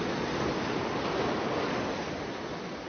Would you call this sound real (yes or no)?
yes